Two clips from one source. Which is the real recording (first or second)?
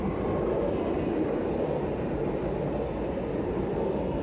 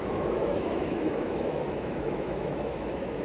first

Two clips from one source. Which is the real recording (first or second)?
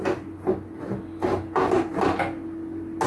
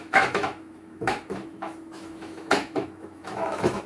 first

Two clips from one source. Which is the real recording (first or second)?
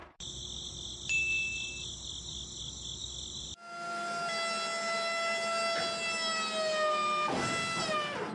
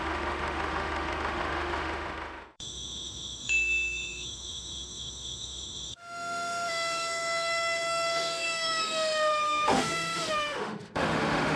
first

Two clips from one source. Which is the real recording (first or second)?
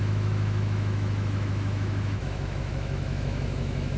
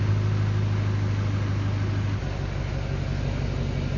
second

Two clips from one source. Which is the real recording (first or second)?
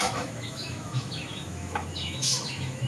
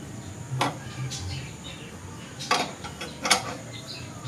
second